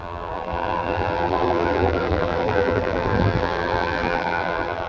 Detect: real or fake fake